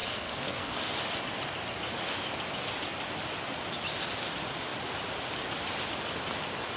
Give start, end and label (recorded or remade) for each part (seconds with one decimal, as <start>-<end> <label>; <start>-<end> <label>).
0.0-0.8 remade; 0.8-6.8 recorded